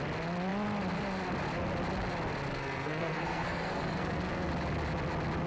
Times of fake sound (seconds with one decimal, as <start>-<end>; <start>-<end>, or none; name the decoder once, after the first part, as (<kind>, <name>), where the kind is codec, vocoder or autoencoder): 2.5-4.5 (codec, SNAC)